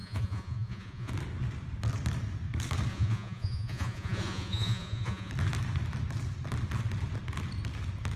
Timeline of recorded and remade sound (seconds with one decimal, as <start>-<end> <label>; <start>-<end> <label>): 0.0-1.1 remade; 1.1-2.9 recorded; 2.9-5.3 remade; 5.3-8.2 recorded